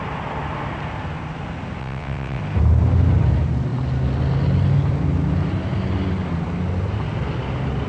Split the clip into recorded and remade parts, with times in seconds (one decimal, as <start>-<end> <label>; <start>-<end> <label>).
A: 0.0-1.8 recorded; 1.8-2.4 remade; 2.4-7.9 recorded